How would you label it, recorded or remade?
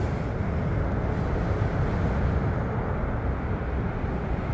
recorded